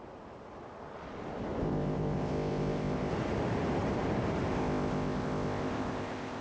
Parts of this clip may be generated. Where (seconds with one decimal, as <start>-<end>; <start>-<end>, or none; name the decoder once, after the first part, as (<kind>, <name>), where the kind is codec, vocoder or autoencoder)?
1.6-3.1 (codec, ZipCodec); 4.5-6.4

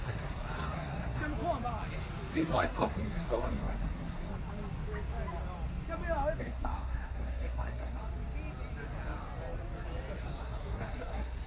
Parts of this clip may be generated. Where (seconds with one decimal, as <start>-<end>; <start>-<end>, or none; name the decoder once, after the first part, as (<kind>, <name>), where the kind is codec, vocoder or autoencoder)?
0.0-1.2 (codec, SNAC); 2.3-4.3; 6.4-8.0; 10.4-11.5

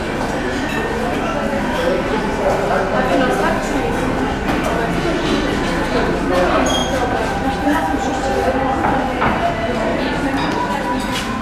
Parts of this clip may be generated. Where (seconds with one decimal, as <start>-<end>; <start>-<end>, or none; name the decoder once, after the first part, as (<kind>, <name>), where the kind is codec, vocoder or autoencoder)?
2.1-2.7 (vocoder, BigVGAN v2); 6.8-8.1; 9.9-10.7

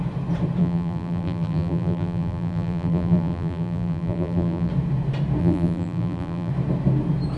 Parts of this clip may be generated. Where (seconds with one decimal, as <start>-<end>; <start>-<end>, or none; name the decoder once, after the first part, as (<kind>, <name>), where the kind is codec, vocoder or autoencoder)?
0.6-4.7 (vocoder, BigVGAN v2); 5.4-6.5

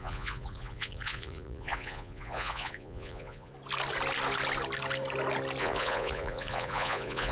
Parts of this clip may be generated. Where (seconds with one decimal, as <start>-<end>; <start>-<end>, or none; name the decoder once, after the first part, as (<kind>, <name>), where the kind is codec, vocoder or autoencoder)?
0.0-3.5 (vocoder, Vocos); 5.6-7.3

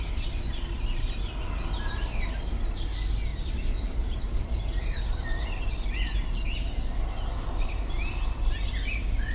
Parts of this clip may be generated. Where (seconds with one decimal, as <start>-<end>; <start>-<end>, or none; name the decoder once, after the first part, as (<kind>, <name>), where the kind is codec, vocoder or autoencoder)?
3.3-6.4 (vocoder, BigVGAN v2)